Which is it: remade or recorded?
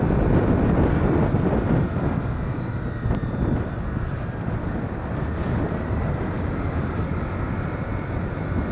recorded